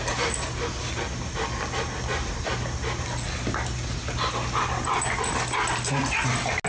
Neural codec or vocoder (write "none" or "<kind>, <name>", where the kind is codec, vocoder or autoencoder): none